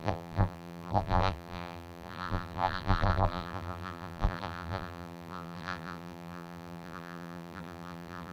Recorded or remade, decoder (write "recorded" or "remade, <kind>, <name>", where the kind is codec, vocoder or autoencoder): remade, vocoder, BigVGAN v2